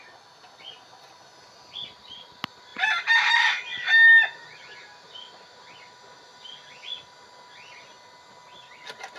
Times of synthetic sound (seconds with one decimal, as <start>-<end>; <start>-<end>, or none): none